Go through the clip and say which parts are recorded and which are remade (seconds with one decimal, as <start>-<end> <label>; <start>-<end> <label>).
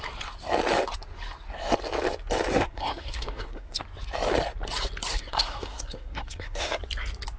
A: 0.0-2.5 recorded; 2.5-3.8 remade; 3.8-5.1 recorded; 5.1-6.8 remade; 6.8-7.4 recorded